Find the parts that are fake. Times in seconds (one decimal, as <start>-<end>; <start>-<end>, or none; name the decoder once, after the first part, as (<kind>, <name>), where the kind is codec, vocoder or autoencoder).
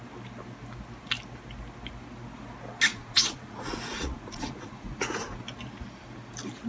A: 2.9-5.4 (vocoder, Vocos)